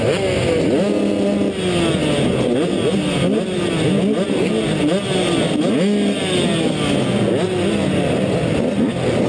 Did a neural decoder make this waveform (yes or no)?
no